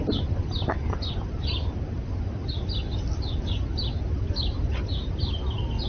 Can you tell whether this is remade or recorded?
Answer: recorded